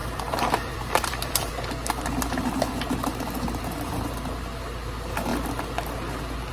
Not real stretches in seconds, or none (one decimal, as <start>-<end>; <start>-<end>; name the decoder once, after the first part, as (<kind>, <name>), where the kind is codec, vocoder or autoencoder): 0.0-1.5 (vocoder, BigVGAN v2)